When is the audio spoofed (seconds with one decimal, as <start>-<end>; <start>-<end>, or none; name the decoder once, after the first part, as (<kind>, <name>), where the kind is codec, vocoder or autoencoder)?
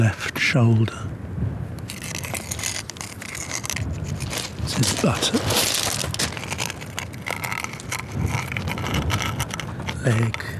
none